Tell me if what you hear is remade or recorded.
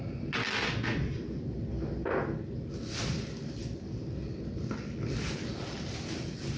recorded